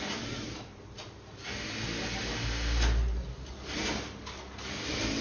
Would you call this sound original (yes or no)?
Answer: yes